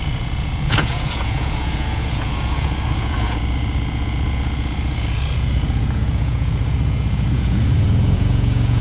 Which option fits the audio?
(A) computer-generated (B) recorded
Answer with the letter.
A